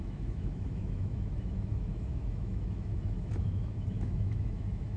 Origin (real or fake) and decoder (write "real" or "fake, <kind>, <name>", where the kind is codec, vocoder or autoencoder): fake, autoencoder, DAC-VAE